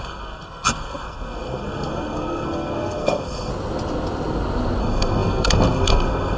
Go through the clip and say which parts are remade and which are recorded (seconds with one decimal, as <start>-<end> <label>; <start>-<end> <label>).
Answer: 0.0-3.5 remade; 3.5-4.8 recorded; 4.8-6.4 remade